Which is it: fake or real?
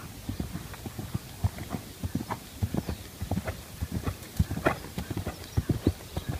real